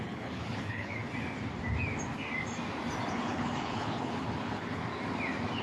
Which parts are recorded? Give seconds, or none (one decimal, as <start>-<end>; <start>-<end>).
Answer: 1.0-3.1; 4.8-5.6